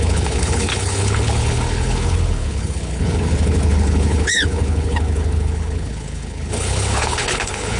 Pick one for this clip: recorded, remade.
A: remade